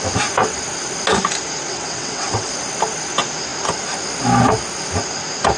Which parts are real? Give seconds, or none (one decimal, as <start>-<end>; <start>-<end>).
0.0-1.7; 2.5-5.6